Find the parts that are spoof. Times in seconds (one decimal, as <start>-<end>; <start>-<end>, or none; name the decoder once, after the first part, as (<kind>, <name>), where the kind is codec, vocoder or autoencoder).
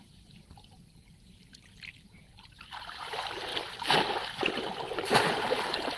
0.0-6.0 (vocoder, BigVGAN v2)